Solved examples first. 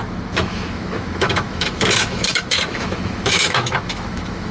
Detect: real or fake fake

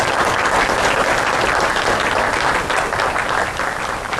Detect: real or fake real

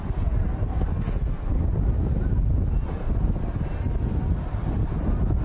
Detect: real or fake real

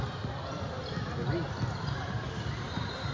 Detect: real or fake real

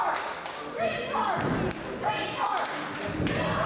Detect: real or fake real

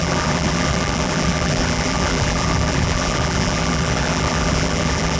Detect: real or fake fake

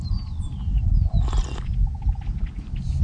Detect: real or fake real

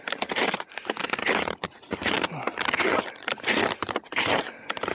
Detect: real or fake fake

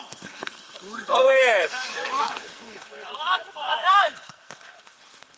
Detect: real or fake fake